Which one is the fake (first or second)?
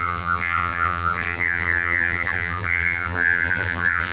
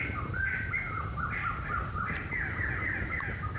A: first